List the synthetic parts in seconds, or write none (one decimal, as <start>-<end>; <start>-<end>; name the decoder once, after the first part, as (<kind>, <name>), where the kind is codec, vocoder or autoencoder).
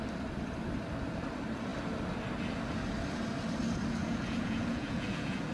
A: 4.0-5.5 (vocoder, Vocos)